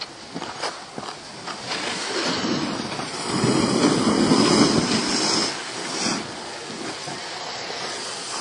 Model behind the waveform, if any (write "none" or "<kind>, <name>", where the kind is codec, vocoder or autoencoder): none